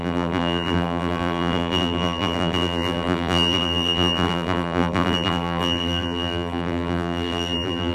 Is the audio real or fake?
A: fake